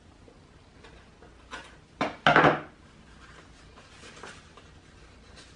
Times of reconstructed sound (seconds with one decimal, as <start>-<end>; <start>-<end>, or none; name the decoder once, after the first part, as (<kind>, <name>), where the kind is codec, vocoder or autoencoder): none